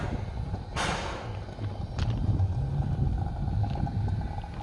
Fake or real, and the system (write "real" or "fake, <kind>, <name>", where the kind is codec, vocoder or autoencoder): real